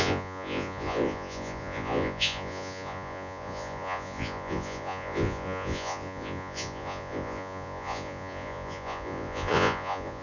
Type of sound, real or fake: fake